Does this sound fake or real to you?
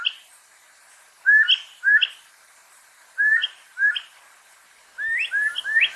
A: real